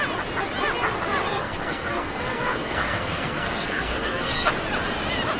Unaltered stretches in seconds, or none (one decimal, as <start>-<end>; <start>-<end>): 0.0-1.3; 4.5-5.4